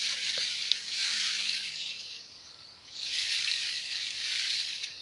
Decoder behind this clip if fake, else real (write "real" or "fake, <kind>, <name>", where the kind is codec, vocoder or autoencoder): fake, codec, DAC